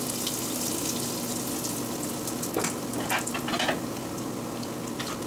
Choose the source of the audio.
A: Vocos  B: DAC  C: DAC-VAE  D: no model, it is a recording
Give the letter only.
D